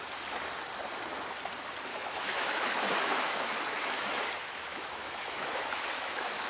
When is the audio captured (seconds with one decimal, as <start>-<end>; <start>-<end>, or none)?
0.0-1.9; 4.2-4.7